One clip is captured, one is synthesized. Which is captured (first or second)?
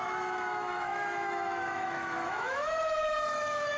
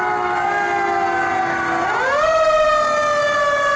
second